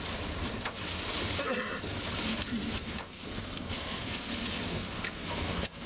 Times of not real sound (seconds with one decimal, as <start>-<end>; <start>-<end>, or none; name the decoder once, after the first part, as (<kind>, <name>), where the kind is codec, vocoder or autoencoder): 2.3-4.3 (codec, SNAC); 4.7-5.9